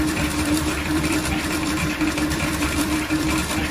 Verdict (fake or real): fake